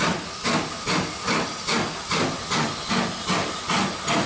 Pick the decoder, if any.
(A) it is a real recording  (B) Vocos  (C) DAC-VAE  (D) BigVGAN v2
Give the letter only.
A